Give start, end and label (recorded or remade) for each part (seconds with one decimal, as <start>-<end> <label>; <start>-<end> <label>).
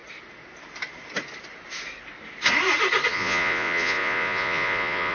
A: 0.0-3.1 recorded; 3.1-5.1 remade